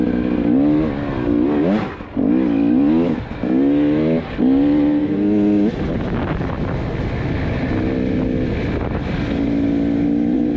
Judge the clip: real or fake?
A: real